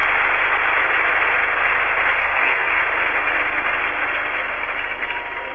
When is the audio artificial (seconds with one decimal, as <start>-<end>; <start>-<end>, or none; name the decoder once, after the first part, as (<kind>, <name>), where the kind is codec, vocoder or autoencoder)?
2.2-2.8 (codec, SNAC)